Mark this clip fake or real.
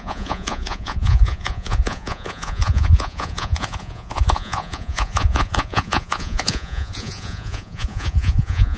fake